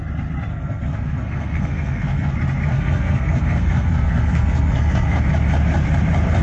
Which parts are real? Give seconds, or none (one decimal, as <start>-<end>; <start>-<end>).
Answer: 0.0-0.5; 2.3-2.7; 5.2-6.4